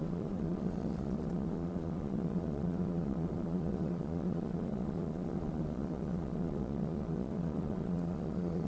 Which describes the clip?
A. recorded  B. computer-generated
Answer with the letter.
B